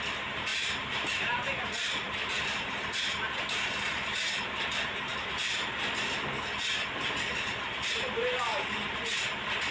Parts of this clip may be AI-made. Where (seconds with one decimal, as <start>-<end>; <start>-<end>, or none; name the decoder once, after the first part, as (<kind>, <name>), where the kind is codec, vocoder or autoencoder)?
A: 0.5-2.7 (vocoder, BigVGAN v2); 5.1-6.0